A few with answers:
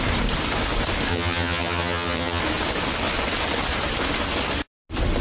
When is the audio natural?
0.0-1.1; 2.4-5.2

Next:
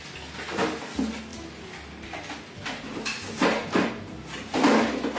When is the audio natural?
0.0-5.2

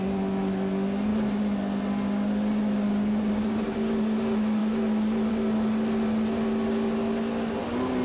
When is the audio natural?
0.0-8.0

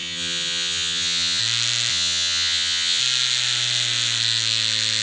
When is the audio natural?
1.4-1.9; 3.0-5.0

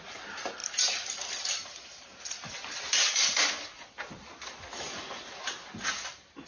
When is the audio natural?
0.0-6.5